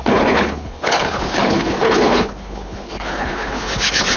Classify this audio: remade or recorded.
remade